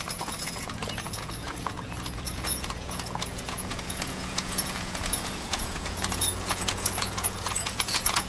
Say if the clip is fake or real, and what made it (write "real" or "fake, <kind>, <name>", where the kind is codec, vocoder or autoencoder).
fake, vocoder, Vocos